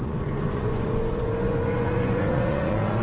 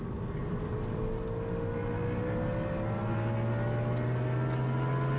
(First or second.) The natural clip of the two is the second